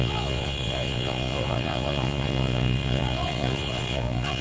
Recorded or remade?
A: remade